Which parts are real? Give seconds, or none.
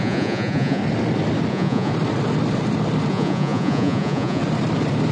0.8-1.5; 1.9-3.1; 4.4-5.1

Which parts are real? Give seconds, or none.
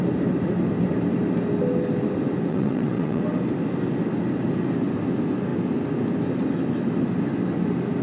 0.0-2.5; 3.2-8.0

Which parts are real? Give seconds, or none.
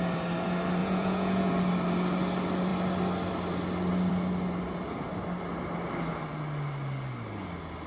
0.0-0.8; 1.5-7.9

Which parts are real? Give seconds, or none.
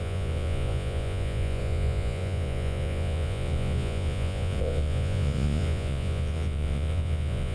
none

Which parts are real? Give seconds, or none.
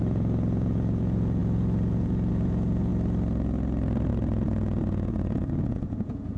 2.9-4.1